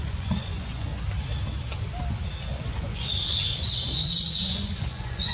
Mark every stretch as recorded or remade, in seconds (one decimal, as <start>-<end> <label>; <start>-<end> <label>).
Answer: 0.0-0.9 remade; 0.9-2.6 recorded; 2.6-5.3 remade